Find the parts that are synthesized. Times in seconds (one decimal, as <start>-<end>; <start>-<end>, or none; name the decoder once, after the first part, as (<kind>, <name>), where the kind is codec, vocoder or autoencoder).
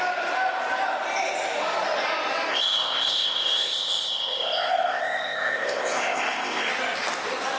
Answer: 2.5-6.7 (codec, ZipCodec)